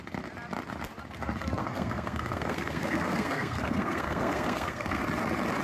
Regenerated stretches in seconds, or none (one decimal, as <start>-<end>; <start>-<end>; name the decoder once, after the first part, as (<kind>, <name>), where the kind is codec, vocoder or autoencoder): 1.6-5.0 (codec, SNAC)